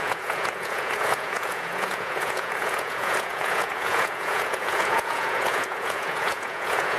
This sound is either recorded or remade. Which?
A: remade